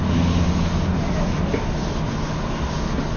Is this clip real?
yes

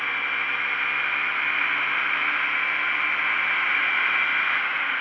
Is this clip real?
yes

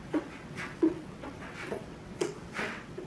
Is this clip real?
no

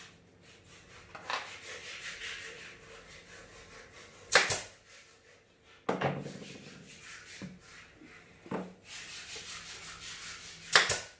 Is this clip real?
yes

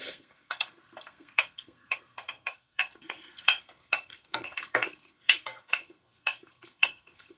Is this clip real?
no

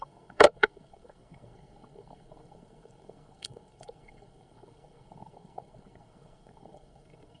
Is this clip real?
no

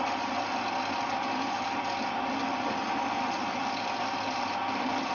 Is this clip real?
yes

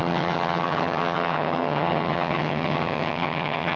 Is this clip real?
no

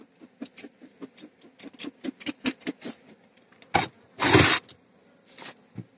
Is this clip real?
yes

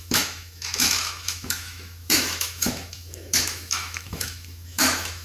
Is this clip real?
no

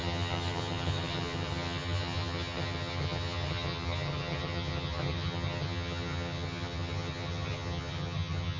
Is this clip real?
no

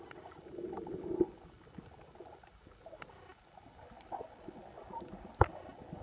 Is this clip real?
yes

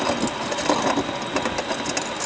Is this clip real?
yes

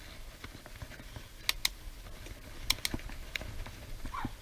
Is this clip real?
yes